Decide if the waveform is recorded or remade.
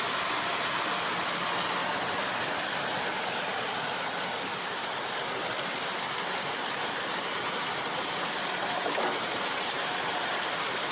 recorded